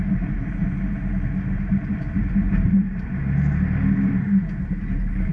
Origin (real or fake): fake